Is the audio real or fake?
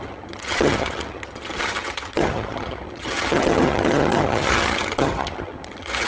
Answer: fake